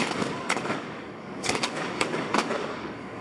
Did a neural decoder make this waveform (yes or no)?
yes